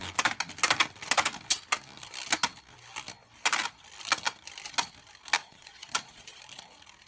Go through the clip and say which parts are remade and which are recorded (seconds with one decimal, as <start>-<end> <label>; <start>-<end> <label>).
0.0-5.4 recorded; 5.4-6.4 remade; 6.4-7.1 recorded